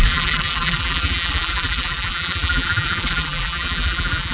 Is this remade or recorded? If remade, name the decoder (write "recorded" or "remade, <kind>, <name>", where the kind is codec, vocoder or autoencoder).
remade, vocoder, BigVGAN v2